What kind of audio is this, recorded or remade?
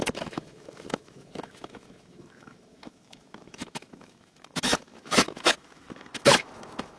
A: remade